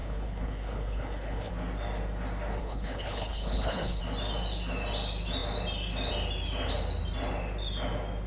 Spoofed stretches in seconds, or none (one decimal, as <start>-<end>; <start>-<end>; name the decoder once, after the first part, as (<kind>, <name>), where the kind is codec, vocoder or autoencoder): 0.0-1.5 (codec, HILCodec); 2.6-4.0